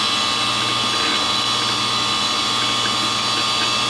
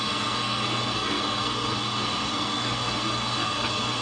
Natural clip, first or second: first